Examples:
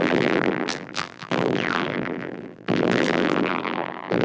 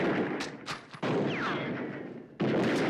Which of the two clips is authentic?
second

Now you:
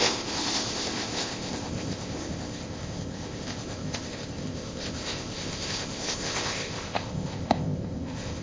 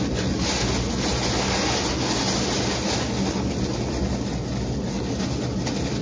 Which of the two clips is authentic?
second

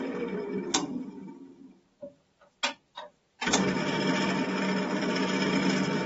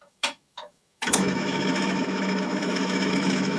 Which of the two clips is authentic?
first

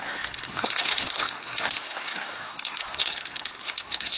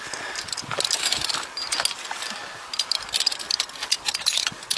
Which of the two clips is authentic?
second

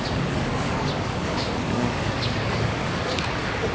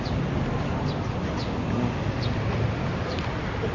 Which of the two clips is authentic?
second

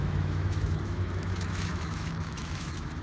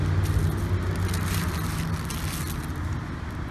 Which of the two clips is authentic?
second